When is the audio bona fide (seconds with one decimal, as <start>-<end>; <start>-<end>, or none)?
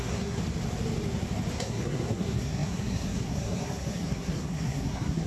0.4-1.5